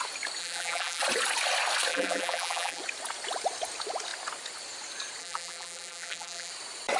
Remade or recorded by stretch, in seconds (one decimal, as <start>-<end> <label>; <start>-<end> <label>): 0.0-0.4 recorded; 0.4-1.0 remade; 1.0-1.9 recorded; 1.9-2.8 remade; 2.8-5.2 recorded; 5.2-6.5 remade; 6.5-7.0 recorded